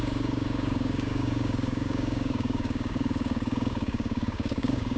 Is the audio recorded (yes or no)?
no